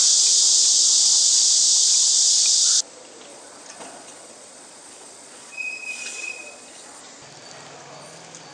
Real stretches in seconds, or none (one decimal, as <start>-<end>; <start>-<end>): 0.0-3.3; 7.0-8.5